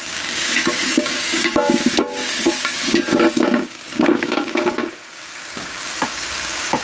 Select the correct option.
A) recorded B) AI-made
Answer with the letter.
B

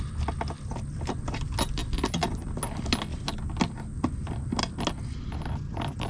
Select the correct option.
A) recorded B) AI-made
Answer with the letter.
A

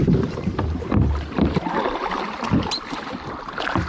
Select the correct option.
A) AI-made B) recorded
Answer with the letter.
B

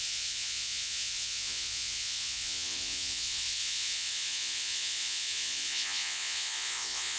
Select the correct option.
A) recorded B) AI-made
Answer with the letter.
B